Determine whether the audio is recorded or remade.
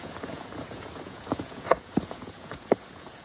remade